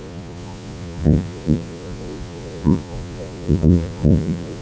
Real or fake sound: fake